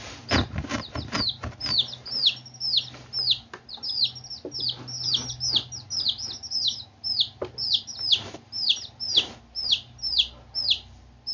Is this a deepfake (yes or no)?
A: no